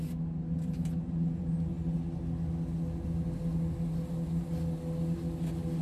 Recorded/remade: recorded